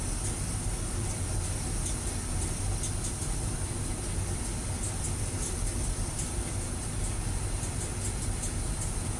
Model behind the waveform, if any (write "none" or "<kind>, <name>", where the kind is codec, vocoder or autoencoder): none